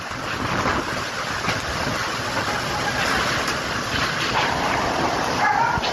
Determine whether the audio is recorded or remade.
recorded